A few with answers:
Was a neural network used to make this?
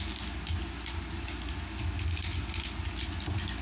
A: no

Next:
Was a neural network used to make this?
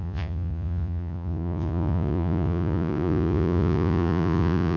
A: yes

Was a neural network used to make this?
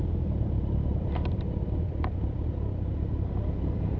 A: no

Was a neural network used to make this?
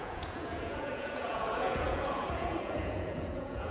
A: yes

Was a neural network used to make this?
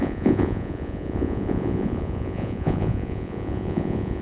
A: yes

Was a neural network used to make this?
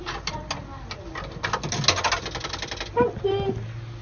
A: no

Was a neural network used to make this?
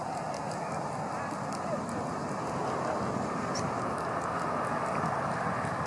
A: no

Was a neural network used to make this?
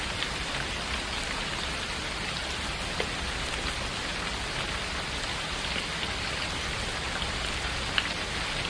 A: no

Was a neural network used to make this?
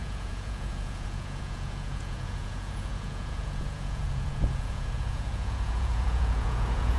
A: yes